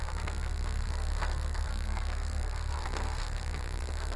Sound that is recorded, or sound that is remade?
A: remade